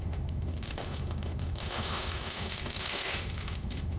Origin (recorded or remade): remade